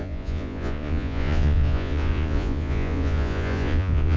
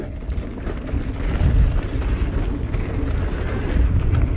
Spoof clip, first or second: first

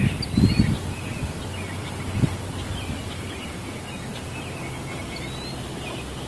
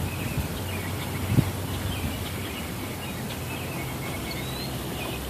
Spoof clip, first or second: second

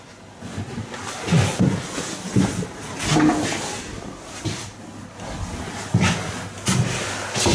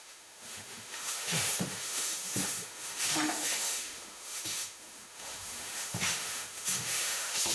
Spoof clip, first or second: second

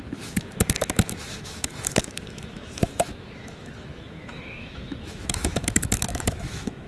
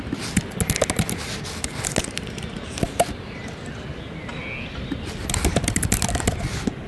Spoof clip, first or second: first